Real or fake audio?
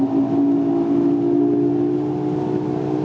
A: real